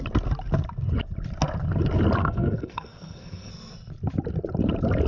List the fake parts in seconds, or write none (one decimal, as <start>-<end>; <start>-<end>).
2.2-3.5